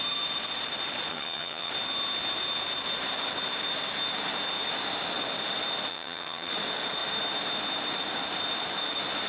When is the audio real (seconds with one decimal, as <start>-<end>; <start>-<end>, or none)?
0.0-1.1; 1.7-5.9; 6.5-9.3